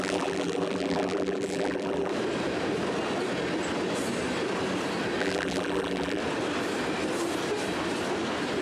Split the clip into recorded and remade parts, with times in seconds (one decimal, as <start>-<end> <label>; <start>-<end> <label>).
0.0-2.1 remade; 2.1-5.2 recorded; 5.2-6.2 remade; 6.2-8.6 recorded